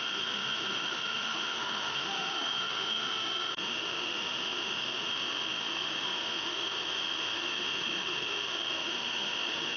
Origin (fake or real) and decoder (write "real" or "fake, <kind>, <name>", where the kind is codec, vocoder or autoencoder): fake, autoencoder, DAC-VAE